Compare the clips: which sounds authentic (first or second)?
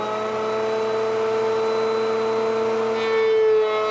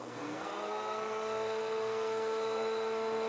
first